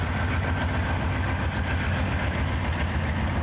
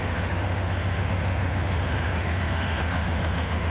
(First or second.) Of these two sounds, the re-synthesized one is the second